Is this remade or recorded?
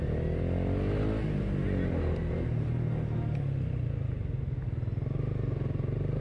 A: recorded